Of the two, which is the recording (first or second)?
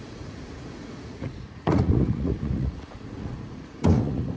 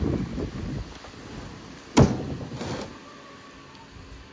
second